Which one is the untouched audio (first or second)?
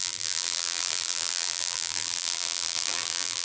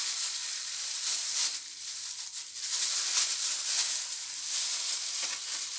second